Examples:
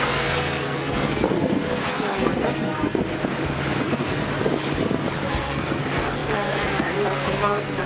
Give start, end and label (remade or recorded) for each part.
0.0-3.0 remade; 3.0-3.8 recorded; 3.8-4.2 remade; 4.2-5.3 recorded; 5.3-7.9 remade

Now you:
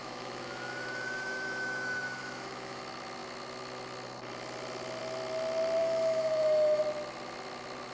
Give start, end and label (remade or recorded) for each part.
0.0-2.8 remade; 2.8-5.8 recorded; 5.8-6.8 remade; 6.8-7.9 recorded

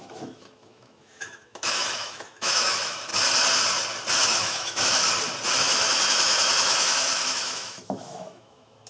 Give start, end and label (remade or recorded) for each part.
0.0-3.1 remade; 3.1-4.1 recorded; 4.1-5.0 remade; 5.0-5.6 recorded; 5.6-8.9 remade

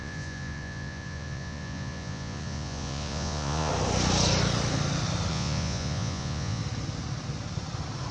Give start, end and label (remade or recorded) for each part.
0.0-3.7 remade; 3.7-5.3 recorded; 5.3-6.6 remade; 6.6-8.1 recorded

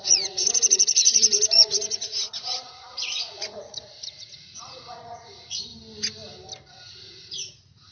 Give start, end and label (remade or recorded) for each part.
0.0-5.7 remade; 5.7-6.9 recorded; 6.9-7.9 remade

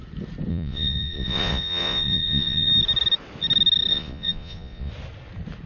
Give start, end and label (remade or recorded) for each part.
0.0-0.5 recorded; 0.5-2.7 remade; 2.7-3.9 recorded; 3.9-4.9 remade; 4.9-5.7 recorded

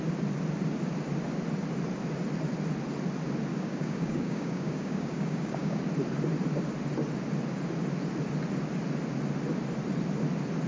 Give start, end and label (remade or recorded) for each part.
0.0-3.5 recorded; 3.5-5.8 remade; 5.8-10.7 recorded

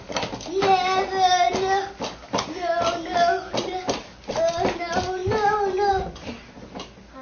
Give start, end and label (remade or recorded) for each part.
0.0-7.2 recorded